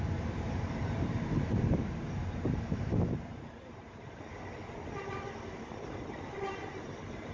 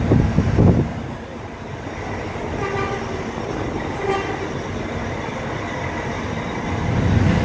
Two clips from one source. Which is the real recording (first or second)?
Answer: second